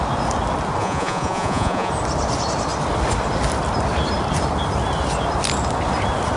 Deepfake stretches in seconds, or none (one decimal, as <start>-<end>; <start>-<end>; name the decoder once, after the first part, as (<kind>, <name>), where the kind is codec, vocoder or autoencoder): 0.8-1.9 (vocoder, Vocos)